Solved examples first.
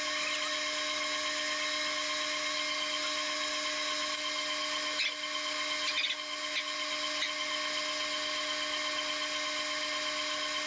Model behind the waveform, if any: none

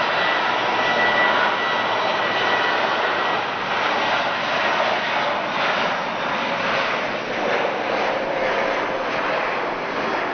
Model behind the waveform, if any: none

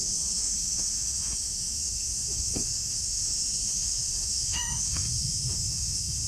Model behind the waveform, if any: autoencoder, DAC-VAE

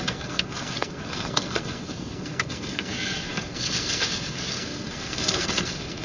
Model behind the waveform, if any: codec, SNAC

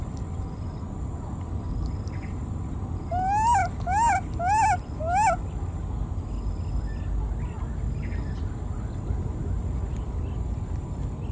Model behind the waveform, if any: none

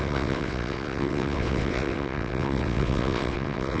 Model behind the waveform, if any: vocoder, WaveNeXt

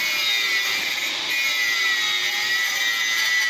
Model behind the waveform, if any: none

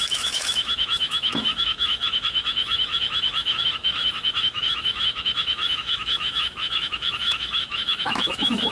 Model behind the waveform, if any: autoencoder, DAC-VAE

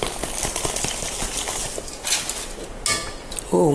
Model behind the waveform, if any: none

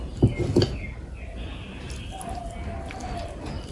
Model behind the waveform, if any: none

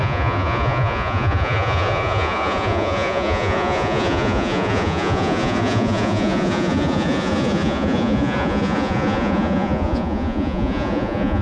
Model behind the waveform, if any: vocoder, Vocos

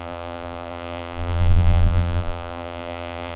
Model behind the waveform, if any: vocoder, BigVGAN v2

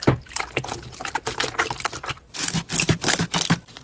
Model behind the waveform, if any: none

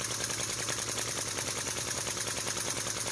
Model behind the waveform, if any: none